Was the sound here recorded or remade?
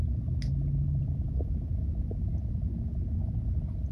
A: recorded